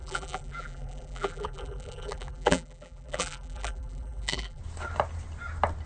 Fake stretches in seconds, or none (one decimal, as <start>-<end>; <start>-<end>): 0.0-4.6